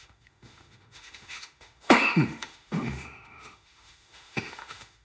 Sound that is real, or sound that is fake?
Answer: fake